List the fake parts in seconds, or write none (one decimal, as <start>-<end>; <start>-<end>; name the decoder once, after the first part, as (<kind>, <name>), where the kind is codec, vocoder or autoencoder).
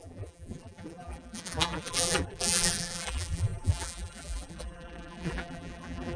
0.0-6.2 (vocoder, BigVGAN v2)